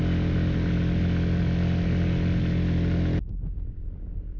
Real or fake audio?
real